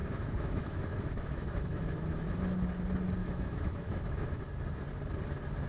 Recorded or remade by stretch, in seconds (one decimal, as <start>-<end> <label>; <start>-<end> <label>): 0.0-2.2 remade; 2.2-3.2 recorded; 3.2-4.4 remade; 4.4-5.7 recorded